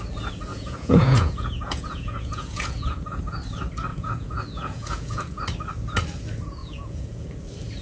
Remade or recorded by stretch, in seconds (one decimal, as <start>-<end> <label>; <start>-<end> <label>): 0.0-0.5 recorded; 0.5-3.2 remade; 3.2-3.9 recorded; 3.9-5.4 remade; 5.4-6.6 recorded; 6.6-7.3 remade; 7.3-7.8 recorded